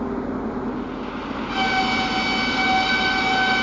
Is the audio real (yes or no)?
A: yes